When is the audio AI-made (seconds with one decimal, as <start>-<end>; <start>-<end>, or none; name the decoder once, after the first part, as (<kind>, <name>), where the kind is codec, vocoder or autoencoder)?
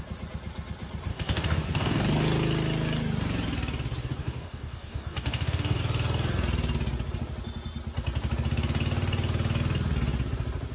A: 1.1-2.0 (codec, DAC); 4.2-5.8